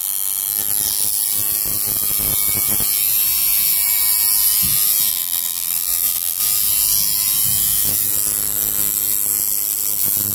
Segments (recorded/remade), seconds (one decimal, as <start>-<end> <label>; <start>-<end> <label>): 0.0-5.1 recorded; 5.1-6.4 remade; 6.4-10.3 recorded